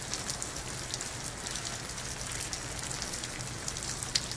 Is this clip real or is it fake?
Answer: real